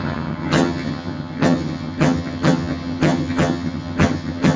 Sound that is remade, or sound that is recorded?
remade